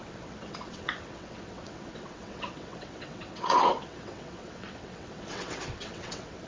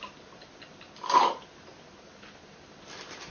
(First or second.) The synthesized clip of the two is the first